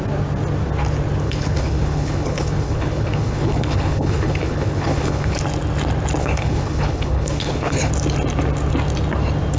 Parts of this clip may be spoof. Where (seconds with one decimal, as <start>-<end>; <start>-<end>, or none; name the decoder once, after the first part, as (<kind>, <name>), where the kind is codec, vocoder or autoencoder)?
1.2-5.4 (codec, HILCodec); 6.2-7.9